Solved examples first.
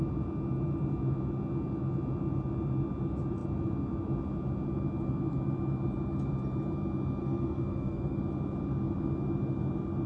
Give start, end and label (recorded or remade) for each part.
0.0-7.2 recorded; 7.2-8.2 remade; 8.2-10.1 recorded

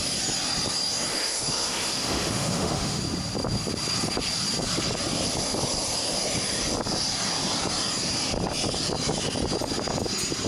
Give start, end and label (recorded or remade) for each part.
0.0-1.1 recorded; 1.1-3.0 remade; 3.0-10.5 recorded

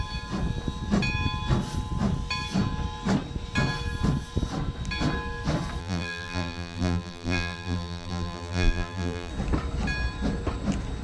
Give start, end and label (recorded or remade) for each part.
0.0-5.8 recorded; 5.8-9.3 remade; 9.3-11.0 recorded

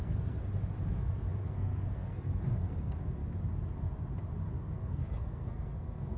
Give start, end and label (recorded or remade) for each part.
0.0-0.4 remade; 0.4-0.9 recorded; 0.9-3.2 remade; 3.2-4.5 recorded; 4.5-6.2 remade

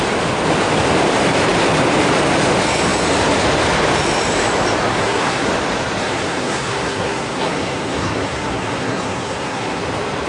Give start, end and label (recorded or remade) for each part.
0.0-4.9 recorded; 4.9-5.5 remade; 5.5-6.0 recorded; 6.0-9.8 remade; 9.8-10.3 recorded